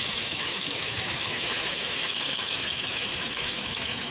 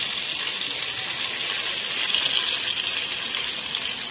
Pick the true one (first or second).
second